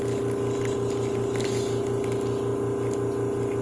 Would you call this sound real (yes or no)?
yes